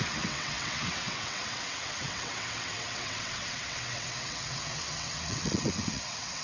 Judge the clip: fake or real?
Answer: fake